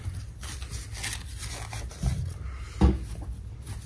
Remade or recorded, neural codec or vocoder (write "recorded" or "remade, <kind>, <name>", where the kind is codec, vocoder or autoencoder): recorded